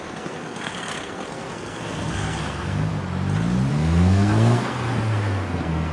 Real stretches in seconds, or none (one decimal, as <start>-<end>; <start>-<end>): 2.9-3.7